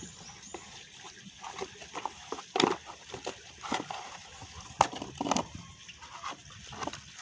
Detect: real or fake real